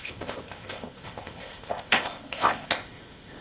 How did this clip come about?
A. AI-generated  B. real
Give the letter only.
A